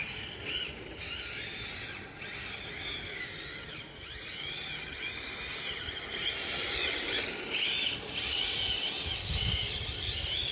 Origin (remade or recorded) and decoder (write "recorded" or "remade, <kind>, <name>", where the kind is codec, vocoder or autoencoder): recorded